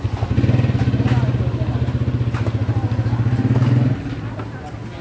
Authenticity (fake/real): real